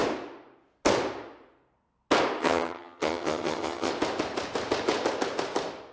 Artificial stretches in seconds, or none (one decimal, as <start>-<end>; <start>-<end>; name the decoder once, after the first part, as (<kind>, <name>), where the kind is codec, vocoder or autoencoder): 2.4-3.9 (vocoder, HiFi-GAN)